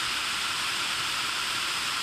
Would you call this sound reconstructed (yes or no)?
no